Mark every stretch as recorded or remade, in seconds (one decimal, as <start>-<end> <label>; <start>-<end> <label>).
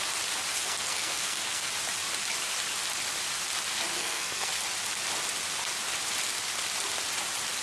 0.0-0.5 recorded; 0.5-1.7 remade; 1.7-3.9 recorded; 3.9-4.5 remade; 4.5-7.6 recorded